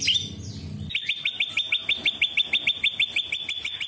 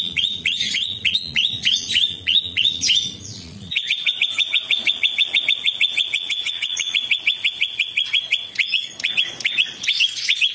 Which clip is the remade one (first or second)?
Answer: second